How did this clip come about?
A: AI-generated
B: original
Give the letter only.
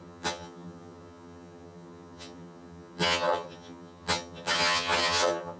A